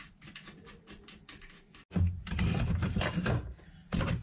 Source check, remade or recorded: recorded